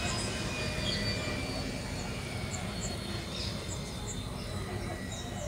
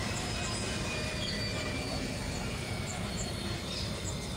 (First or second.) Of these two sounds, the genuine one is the first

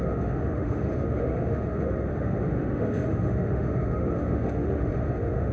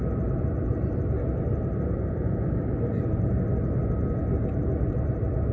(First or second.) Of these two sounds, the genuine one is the second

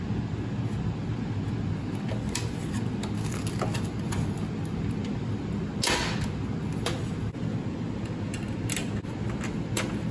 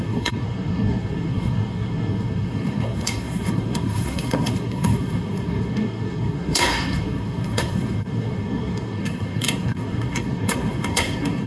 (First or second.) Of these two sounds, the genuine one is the first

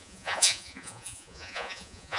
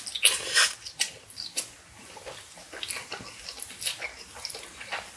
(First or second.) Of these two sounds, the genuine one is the second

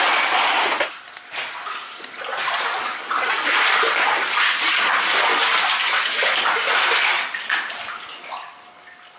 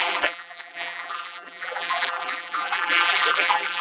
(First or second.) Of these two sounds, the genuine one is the first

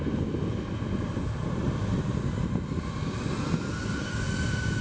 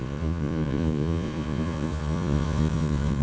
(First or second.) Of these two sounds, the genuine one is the first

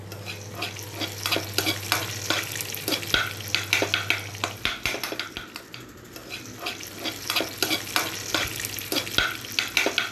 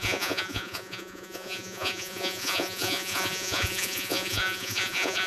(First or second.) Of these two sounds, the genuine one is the first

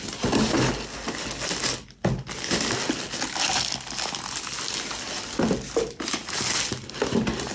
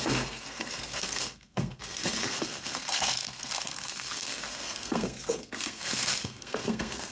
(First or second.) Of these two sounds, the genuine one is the first